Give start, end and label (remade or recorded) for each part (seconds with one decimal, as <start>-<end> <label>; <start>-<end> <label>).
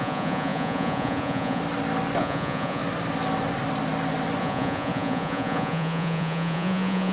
0.0-1.6 remade; 1.6-2.2 recorded; 2.2-2.8 remade; 2.8-4.4 recorded; 4.4-7.1 remade